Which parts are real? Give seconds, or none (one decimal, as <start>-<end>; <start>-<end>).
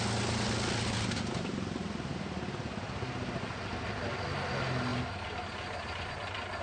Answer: 0.0-6.6